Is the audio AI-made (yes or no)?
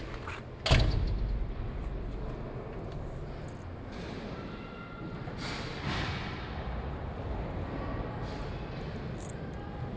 no